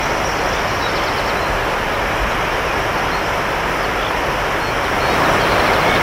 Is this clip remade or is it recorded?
recorded